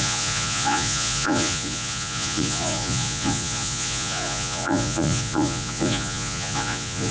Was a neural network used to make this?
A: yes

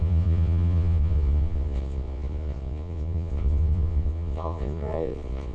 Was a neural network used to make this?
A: yes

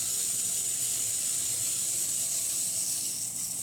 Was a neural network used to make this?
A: no